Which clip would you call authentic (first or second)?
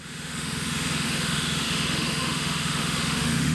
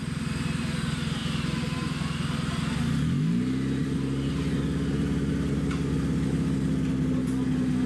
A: second